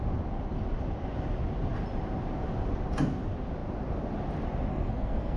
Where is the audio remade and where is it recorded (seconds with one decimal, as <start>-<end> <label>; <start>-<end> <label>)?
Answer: 0.0-4.7 recorded; 4.7-5.4 remade